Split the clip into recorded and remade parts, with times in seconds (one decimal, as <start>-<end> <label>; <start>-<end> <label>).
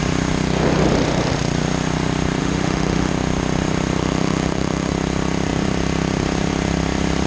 0.0-2.4 recorded; 2.4-3.1 remade; 3.1-4.0 recorded; 4.0-4.9 remade; 4.9-7.3 recorded